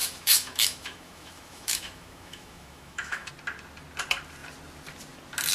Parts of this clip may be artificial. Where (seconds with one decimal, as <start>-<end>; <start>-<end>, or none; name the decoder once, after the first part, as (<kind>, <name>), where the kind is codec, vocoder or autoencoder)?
0.0-3.3 (autoencoder, DAC-VAE)